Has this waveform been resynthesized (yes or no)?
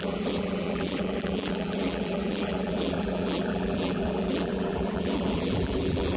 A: yes